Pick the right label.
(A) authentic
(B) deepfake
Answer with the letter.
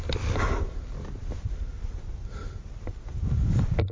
A